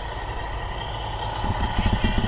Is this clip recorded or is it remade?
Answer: recorded